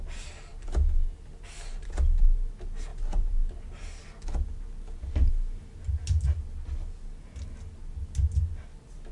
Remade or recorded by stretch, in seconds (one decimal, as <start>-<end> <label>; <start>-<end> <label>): 0.0-9.1 recorded